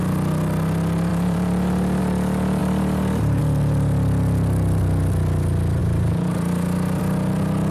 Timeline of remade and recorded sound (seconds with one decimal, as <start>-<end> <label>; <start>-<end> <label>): 0.0-1.1 recorded; 1.1-2.0 remade; 2.0-2.6 recorded; 2.6-3.4 remade; 3.4-5.8 recorded; 5.8-7.0 remade; 7.0-7.7 recorded